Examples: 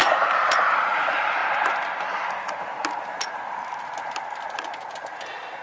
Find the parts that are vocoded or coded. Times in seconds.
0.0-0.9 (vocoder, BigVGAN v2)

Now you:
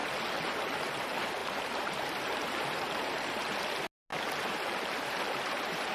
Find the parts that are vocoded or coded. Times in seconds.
1.4-3.3 (vocoder, BigVGAN v2); 4.1-5.9

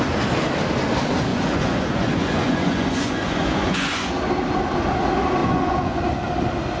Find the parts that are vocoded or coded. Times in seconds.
1.3-4.1 (vocoder, Vocos); 5.4-6.0

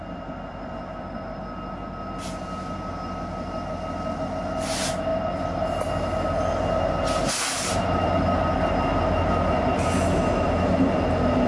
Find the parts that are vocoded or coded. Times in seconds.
none

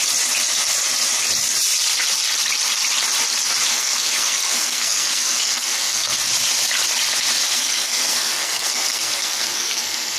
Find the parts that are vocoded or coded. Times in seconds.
3.7-6.2 (codec, SNAC); 7.5-10.2